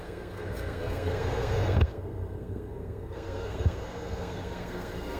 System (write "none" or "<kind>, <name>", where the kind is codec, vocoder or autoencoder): codec, SNAC